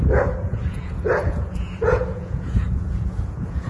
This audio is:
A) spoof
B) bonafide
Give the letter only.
A